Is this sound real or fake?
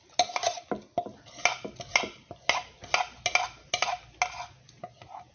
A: real